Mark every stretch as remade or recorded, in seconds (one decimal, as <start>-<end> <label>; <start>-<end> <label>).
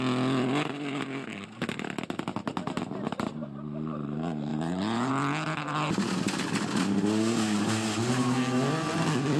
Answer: 0.0-4.5 recorded; 4.5-5.1 remade; 5.1-9.4 recorded